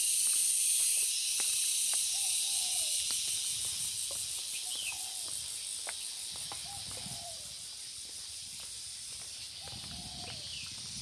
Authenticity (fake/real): real